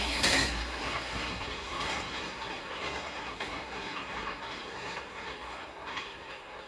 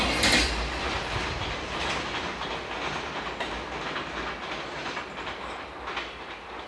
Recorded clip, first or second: second